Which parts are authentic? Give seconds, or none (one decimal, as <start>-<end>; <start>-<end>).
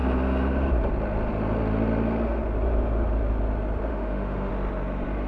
0.0-3.9; 4.5-5.3